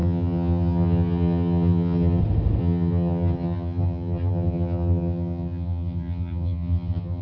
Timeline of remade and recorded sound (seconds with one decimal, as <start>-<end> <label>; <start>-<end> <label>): 0.0-2.2 remade; 2.2-2.6 recorded; 2.6-7.2 remade